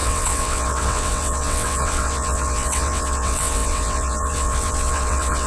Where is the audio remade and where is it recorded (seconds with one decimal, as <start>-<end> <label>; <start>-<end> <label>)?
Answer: 0.0-5.5 remade